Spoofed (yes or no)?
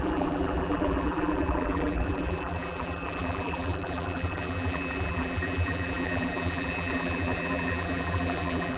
yes